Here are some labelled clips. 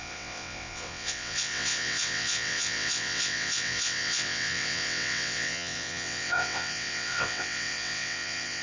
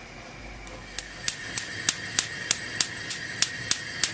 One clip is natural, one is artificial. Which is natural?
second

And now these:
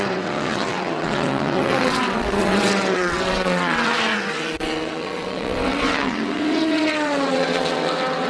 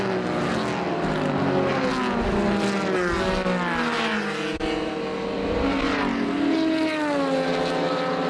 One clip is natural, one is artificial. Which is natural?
second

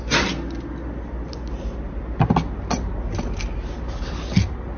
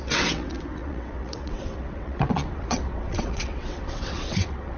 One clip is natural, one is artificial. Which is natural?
first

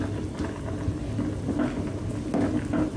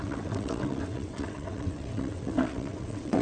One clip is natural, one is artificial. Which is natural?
first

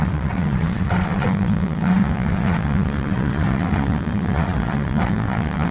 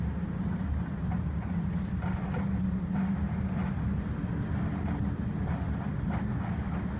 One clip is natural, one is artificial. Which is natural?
second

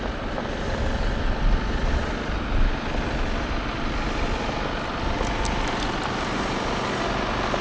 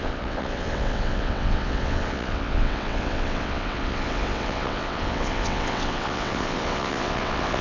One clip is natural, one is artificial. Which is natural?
first